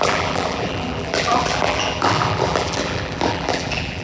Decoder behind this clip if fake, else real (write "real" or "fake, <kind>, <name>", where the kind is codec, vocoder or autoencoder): fake, vocoder, BigVGAN v2